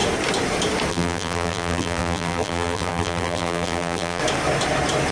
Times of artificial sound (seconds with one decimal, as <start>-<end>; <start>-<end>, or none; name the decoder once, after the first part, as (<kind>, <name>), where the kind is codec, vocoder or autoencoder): 0.9-4.2 (vocoder, BigVGAN v2)